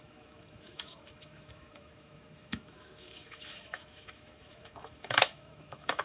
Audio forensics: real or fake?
fake